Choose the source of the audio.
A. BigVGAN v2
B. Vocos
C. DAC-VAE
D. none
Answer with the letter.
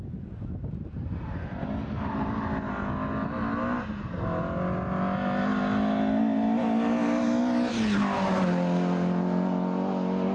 D